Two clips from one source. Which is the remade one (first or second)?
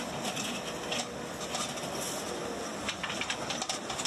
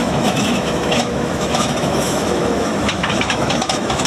second